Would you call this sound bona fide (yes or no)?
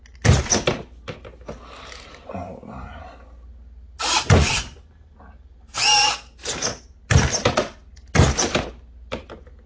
yes